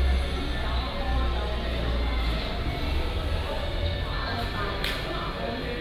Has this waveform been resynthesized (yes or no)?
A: no